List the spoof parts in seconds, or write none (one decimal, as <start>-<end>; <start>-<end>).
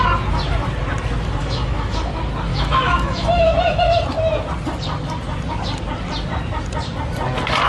1.4-2.1; 2.5-3.8